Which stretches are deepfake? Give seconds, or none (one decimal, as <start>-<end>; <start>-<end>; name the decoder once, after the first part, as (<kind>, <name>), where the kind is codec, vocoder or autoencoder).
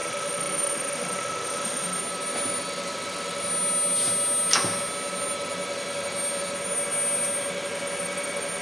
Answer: 0.0-2.0 (autoencoder, DAC-VAE)